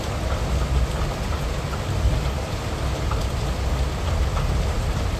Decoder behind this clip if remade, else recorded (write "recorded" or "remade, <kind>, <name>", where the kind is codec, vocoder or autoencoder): recorded